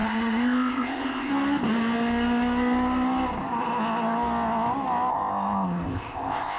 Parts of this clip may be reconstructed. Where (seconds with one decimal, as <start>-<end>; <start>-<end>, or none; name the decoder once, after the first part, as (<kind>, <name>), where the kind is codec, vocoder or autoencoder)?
0.0-1.3 (codec, ZipCodec); 5.1-6.6